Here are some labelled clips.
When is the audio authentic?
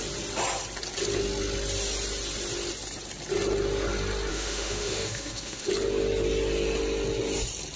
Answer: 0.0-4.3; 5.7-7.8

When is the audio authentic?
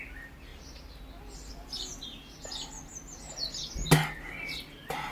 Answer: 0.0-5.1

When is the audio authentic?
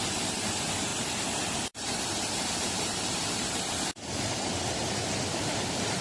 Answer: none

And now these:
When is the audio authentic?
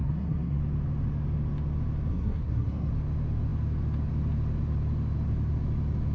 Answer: 0.6-2.1; 2.9-6.1